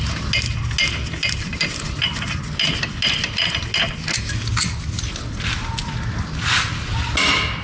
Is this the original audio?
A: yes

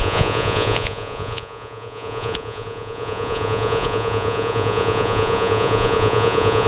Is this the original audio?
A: no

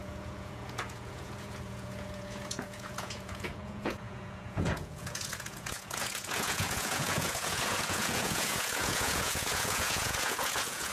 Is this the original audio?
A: no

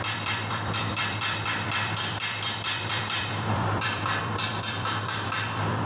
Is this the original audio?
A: no